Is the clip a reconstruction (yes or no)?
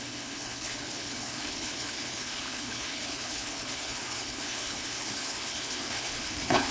yes